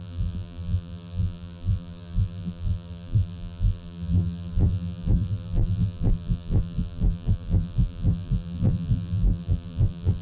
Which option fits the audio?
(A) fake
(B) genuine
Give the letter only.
A